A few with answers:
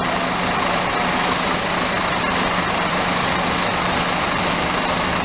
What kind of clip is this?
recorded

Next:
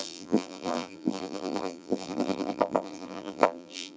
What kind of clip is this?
remade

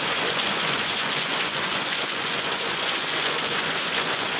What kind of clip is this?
remade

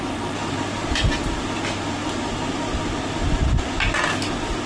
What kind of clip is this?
recorded